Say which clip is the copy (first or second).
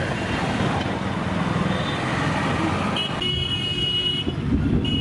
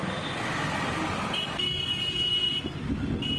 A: second